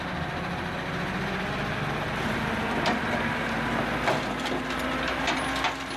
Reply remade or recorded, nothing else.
recorded